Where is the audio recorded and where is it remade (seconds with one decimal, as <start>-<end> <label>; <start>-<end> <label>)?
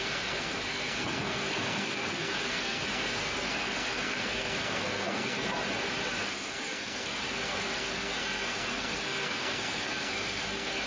0.0-5.6 remade; 5.6-6.1 recorded; 6.1-10.9 remade